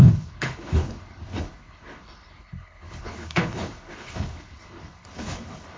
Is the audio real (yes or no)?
no